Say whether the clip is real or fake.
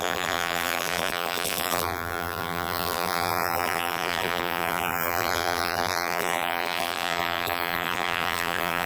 fake